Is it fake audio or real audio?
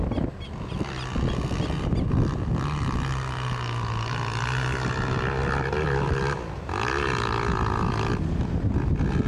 real